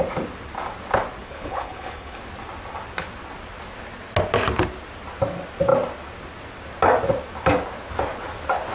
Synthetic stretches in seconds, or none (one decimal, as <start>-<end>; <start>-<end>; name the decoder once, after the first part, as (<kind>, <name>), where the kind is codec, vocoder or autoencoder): 1.2-2.2 (codec, HILCodec)